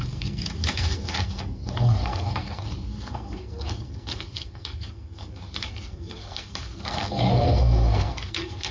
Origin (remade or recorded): remade